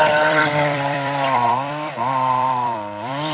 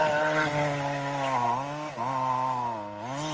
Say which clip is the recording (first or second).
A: second